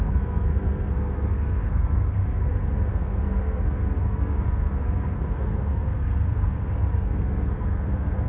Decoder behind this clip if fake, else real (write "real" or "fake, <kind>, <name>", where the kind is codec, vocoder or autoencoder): fake, codec, SNAC